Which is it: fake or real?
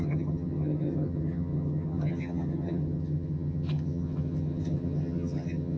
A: fake